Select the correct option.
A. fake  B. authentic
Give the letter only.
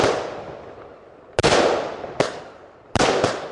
B